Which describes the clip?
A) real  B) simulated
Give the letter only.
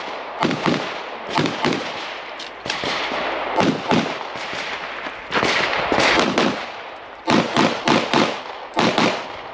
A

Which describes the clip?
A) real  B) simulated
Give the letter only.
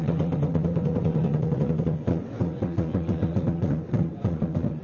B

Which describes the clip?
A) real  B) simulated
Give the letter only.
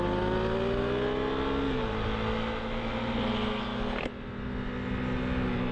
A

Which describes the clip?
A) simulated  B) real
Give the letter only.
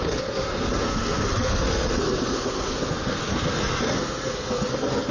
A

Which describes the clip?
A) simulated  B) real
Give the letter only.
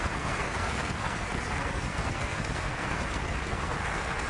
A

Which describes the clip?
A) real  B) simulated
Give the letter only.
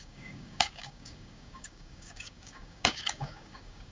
B